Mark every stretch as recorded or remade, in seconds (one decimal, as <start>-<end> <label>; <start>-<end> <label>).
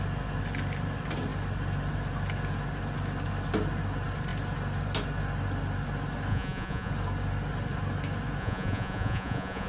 0.0-6.3 recorded; 6.3-6.9 remade; 6.9-8.4 recorded; 8.4-9.7 remade